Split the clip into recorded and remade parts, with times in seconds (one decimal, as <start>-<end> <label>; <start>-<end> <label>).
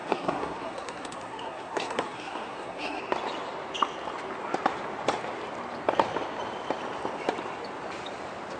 0.0-3.0 remade; 3.0-8.6 recorded